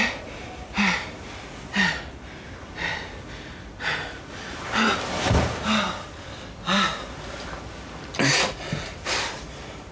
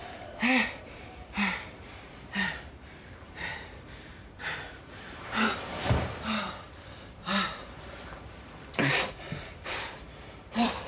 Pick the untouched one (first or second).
first